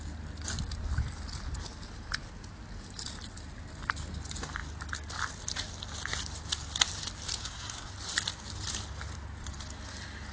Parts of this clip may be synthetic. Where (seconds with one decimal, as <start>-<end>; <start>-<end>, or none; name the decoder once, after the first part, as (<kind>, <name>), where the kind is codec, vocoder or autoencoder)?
7.4-7.9 (codec, SNAC)